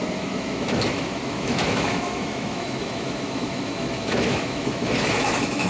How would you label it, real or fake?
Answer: fake